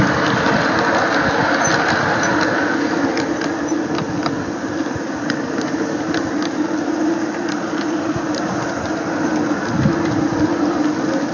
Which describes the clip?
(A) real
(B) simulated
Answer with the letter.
A